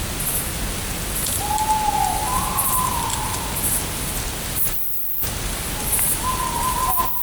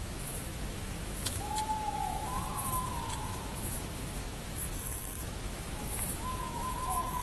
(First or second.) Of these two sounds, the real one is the first